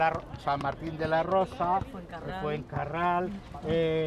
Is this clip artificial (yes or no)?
no